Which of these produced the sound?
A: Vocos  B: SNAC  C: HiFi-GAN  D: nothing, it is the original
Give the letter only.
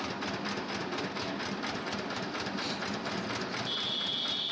D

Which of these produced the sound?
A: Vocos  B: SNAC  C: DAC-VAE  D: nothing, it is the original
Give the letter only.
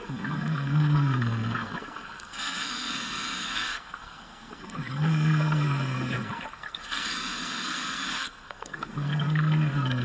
B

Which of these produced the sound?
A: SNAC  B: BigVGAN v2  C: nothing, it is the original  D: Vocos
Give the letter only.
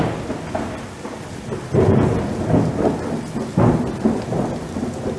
C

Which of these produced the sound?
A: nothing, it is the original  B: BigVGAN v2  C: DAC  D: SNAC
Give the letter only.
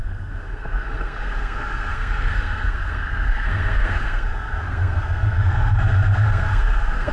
D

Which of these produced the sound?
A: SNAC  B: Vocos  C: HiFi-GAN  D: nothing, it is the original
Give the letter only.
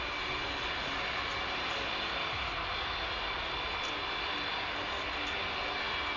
D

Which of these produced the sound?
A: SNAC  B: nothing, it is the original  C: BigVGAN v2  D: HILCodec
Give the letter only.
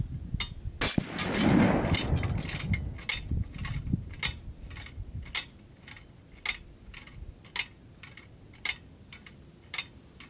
B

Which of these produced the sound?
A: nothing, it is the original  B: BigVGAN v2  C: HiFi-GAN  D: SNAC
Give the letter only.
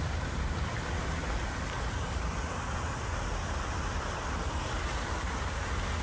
A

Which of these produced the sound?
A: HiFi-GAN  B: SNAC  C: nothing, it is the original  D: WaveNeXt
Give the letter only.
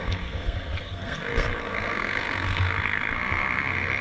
B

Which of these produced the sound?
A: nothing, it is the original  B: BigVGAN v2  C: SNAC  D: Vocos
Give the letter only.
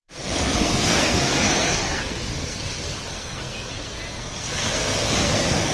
C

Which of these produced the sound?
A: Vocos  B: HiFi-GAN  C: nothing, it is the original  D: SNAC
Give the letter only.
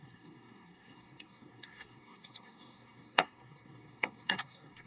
D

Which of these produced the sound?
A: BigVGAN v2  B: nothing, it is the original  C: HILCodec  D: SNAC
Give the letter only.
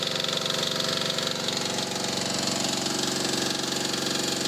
B